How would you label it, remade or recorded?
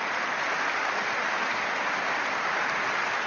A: recorded